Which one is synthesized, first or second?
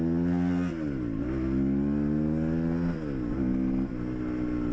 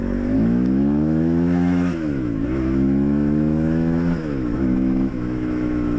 second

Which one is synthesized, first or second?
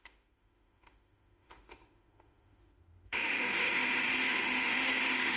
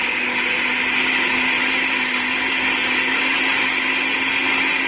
first